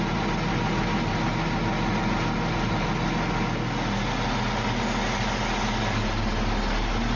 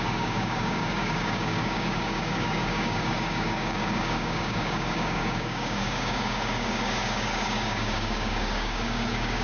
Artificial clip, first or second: second